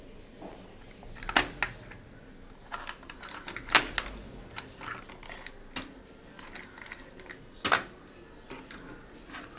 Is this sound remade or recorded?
recorded